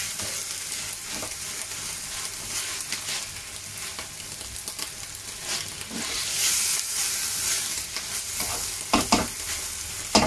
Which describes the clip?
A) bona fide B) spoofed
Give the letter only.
A